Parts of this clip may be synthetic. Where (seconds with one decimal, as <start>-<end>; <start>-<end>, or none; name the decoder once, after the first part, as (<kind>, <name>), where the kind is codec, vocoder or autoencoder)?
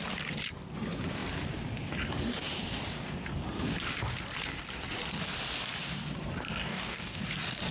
6.6-7.2 (codec, DAC)